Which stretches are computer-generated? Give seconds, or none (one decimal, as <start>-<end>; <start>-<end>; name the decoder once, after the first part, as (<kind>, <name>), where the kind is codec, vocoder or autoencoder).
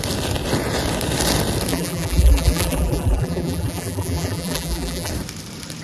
1.7-5.1 (vocoder, BigVGAN v2)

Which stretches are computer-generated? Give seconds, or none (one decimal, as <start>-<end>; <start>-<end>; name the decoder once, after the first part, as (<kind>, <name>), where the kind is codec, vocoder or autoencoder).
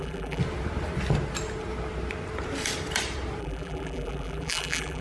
0.0-0.4 (vocoder, BigVGAN v2); 3.4-5.0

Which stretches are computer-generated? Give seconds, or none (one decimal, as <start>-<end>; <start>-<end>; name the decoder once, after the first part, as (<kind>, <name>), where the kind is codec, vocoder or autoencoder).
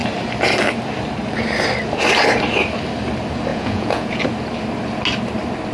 3.5-4.2 (vocoder, Vocos)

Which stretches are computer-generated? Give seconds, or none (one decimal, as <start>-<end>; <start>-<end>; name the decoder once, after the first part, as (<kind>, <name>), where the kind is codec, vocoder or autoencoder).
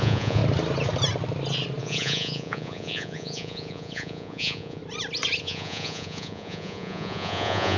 0.0-0.4 (vocoder, Vocos); 1.8-4.8; 5.4-7.8